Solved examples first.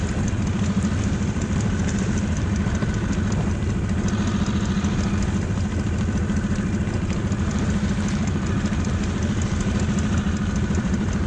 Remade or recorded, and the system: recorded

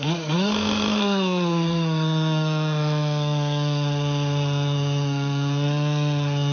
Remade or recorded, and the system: remade, codec, SNAC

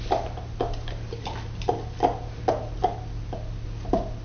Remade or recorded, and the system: recorded